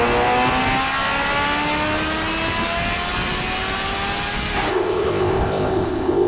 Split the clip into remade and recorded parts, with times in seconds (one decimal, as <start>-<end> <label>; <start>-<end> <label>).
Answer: 0.0-4.7 recorded; 4.7-6.3 remade